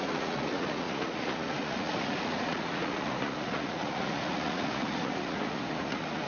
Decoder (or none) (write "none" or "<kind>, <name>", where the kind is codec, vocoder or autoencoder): vocoder, Vocos